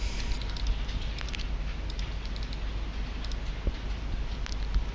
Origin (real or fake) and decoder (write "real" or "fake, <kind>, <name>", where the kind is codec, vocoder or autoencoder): real